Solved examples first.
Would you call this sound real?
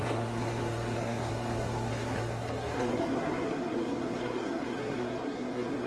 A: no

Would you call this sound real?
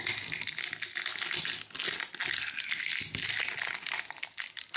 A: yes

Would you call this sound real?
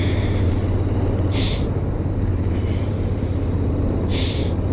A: yes